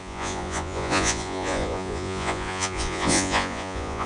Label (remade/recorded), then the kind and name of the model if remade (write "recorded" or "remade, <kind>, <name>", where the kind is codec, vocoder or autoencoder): remade, vocoder, Vocos